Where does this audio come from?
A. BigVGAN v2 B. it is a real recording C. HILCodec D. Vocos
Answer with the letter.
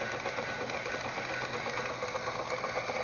B